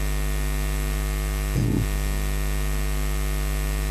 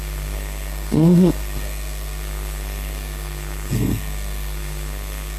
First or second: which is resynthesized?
second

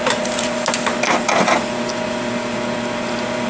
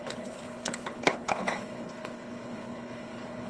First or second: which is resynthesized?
second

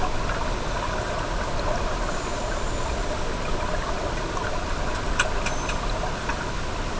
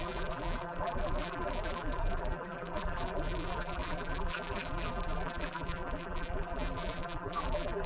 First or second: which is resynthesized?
second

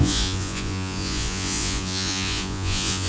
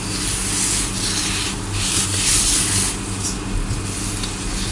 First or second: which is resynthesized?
first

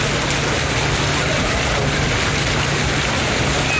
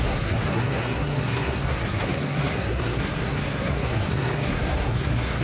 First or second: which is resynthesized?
second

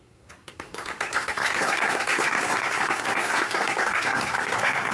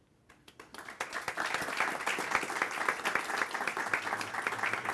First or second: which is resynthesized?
first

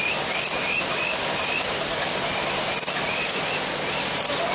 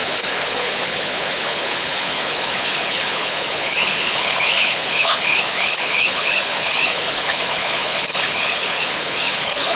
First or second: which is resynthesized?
second